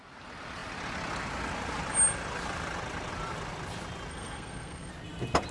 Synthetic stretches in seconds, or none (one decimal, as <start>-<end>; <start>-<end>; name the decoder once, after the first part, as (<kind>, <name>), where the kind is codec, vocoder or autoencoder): 4.1-4.9 (codec, SNAC)